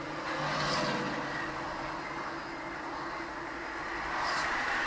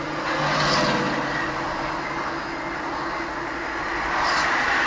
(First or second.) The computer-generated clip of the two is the first